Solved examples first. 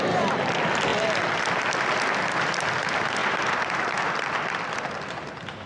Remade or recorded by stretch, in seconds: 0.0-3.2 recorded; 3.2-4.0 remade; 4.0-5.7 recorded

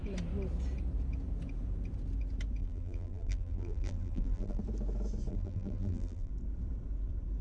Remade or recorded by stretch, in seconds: 0.0-2.6 recorded; 2.6-4.6 remade; 4.6-5.3 recorded; 5.3-6.3 remade; 6.3-7.4 recorded

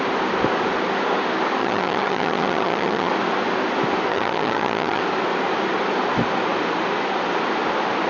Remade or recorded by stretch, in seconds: 0.0-1.6 recorded; 1.6-3.1 remade; 3.1-4.1 recorded; 4.1-5.0 remade; 5.0-8.1 recorded

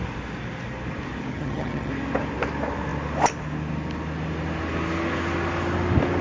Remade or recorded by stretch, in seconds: 0.0-1.3 recorded; 1.3-1.9 remade; 1.9-6.2 recorded

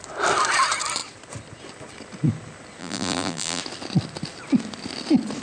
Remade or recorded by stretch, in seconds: 0.0-2.8 recorded; 2.8-3.6 remade; 3.6-5.4 recorded

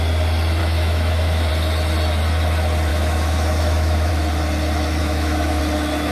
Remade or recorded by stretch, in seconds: 0.0-0.6 recorded; 0.6-1.5 remade; 1.5-2.9 recorded; 2.9-4.1 remade; 4.1-5.0 recorded; 5.0-5.6 remade; 5.6-6.1 recorded